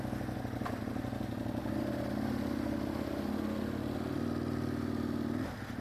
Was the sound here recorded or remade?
recorded